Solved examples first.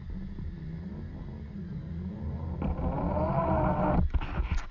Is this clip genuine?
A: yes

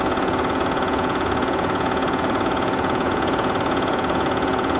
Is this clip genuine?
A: no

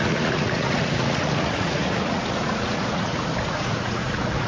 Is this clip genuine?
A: no